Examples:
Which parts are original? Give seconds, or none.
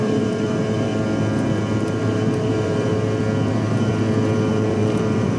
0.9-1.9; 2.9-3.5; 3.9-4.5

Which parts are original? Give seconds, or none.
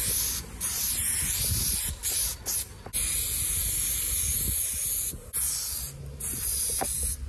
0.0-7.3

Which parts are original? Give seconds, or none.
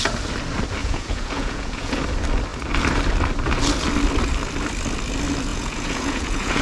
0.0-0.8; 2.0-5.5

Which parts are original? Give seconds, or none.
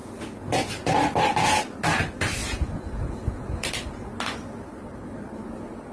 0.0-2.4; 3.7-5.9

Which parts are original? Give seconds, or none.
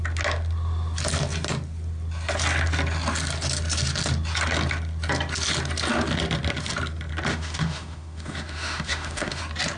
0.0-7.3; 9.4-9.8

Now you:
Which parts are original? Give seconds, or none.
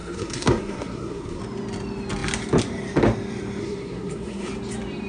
1.4-3.6; 4.5-5.1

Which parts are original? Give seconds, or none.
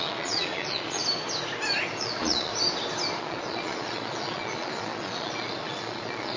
1.0-2.0; 2.5-3.2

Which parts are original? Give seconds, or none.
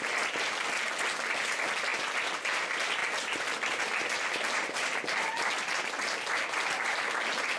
0.0-7.6